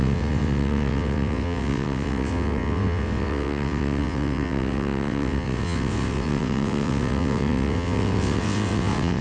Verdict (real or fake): fake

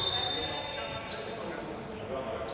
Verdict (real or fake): real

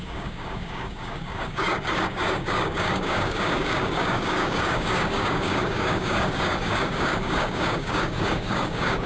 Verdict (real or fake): fake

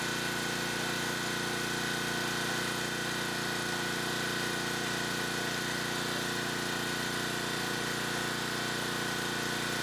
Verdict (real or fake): real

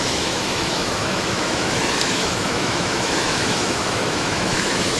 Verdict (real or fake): fake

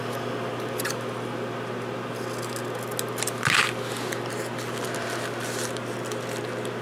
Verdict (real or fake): real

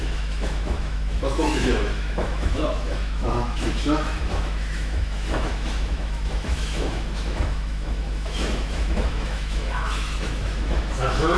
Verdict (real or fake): fake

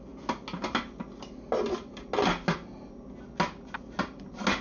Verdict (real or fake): real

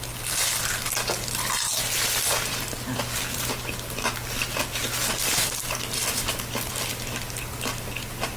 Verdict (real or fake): real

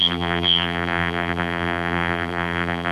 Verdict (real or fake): fake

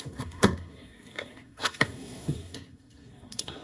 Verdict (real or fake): fake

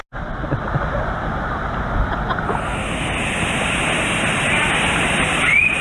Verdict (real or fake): real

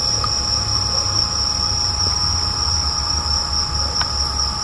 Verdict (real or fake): real